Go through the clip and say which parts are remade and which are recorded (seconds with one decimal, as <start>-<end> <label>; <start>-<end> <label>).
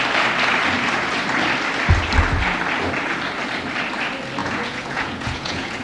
0.0-4.4 recorded; 4.4-5.8 remade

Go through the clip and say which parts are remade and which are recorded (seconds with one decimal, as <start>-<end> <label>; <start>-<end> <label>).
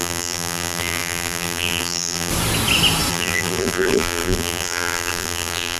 0.0-2.3 remade; 2.3-3.1 recorded; 3.1-5.8 remade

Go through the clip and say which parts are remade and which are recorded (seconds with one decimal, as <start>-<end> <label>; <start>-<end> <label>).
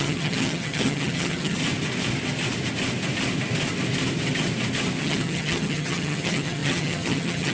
0.0-1.6 remade; 1.6-5.0 recorded; 5.0-7.5 remade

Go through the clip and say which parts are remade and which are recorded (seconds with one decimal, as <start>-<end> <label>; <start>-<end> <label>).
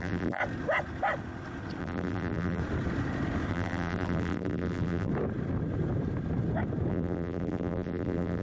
0.0-0.4 remade; 0.4-1.8 recorded; 1.8-2.6 remade; 2.6-3.5 recorded; 3.5-5.1 remade; 5.1-6.9 recorded; 6.9-8.4 remade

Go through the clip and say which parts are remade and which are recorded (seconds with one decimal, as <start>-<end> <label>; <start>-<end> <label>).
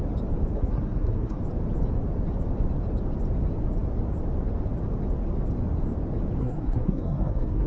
0.0-0.5 recorded; 0.5-1.4 remade; 1.4-6.4 recorded; 6.4-7.7 remade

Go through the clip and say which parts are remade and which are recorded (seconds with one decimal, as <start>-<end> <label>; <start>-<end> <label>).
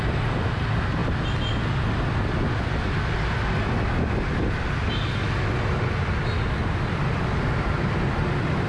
0.0-1.0 remade; 1.0-5.6 recorded; 5.6-8.7 remade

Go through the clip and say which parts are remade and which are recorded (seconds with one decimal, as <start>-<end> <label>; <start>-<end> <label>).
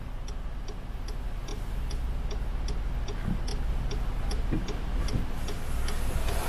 0.0-6.5 recorded